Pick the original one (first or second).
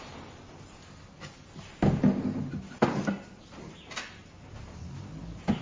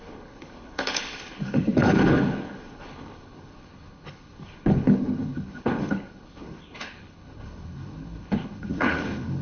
first